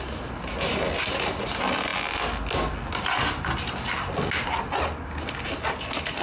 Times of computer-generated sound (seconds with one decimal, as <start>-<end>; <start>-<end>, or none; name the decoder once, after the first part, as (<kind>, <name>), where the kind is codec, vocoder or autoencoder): none